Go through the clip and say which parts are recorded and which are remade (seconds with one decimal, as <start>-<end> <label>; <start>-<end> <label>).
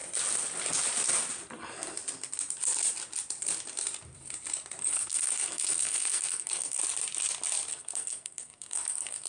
0.0-4.9 recorded; 4.9-6.8 remade; 6.8-7.7 recorded; 7.7-9.3 remade